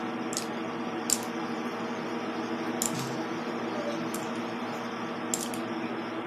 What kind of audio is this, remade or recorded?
recorded